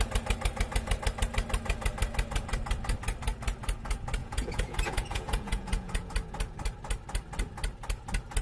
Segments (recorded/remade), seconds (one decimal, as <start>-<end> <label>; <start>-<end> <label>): 0.0-4.2 recorded; 4.2-6.1 remade; 6.1-8.4 recorded